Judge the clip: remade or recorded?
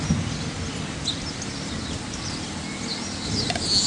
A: recorded